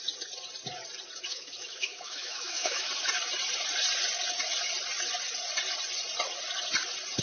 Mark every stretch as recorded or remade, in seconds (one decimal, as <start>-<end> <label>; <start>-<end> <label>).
0.0-1.3 recorded; 1.3-2.9 remade; 2.9-7.2 recorded